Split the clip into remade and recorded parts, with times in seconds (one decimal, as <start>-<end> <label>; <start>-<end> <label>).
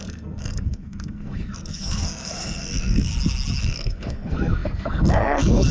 0.0-3.1 remade; 3.1-3.6 recorded; 3.6-5.7 remade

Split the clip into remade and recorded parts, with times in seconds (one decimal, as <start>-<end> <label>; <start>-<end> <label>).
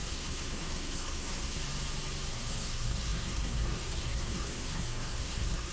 0.0-1.6 remade; 1.6-2.3 recorded; 2.3-5.7 remade